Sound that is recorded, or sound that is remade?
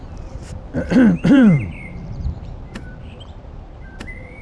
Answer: remade